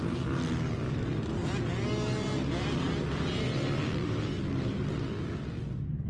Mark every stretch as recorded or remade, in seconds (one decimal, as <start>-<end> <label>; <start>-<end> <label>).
0.0-6.1 recorded